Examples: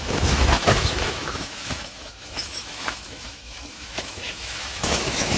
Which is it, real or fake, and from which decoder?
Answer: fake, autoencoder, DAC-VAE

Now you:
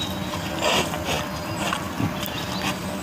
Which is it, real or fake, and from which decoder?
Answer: real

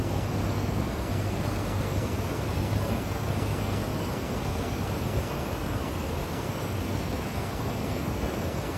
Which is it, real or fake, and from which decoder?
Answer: fake, codec, SNAC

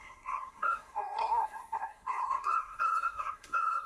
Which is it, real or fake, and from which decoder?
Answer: fake, codec, SNAC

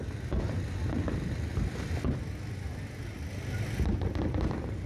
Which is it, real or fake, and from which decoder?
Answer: real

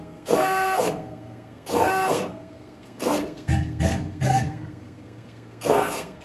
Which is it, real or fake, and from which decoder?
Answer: fake, codec, SNAC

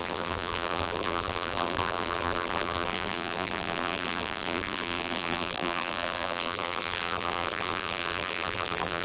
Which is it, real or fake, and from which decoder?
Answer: fake, vocoder, BigVGAN v2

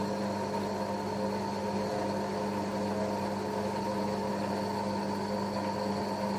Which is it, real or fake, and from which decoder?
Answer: real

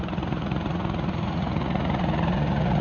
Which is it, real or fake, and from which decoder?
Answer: fake, vocoder, Vocos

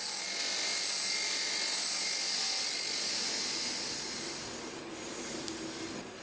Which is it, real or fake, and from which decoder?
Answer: real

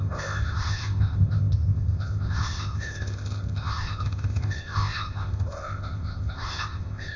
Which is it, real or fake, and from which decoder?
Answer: fake, codec, ZipCodec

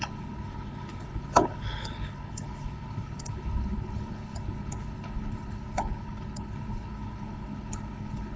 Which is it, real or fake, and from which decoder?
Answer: fake, codec, HILCodec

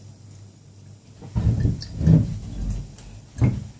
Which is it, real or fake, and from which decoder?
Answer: real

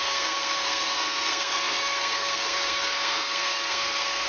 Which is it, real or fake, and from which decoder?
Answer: fake, codec, SNAC